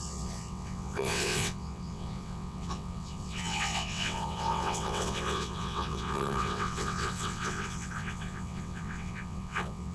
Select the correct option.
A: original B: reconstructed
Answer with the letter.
B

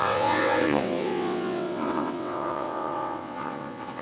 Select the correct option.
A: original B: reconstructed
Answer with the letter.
B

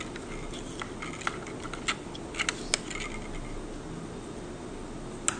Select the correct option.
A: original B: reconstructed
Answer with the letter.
A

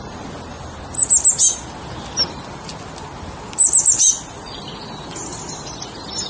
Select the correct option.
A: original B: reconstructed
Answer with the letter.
A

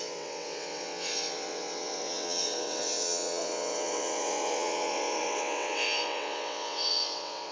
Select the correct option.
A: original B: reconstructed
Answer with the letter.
B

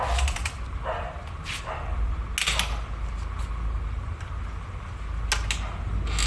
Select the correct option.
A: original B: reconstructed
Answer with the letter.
A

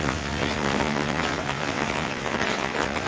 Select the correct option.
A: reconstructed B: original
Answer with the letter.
A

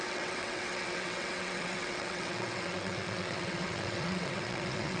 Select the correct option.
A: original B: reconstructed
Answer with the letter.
B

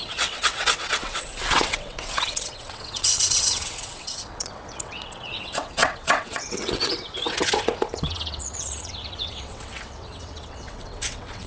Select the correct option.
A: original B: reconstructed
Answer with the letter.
B